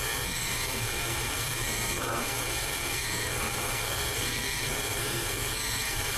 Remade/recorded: remade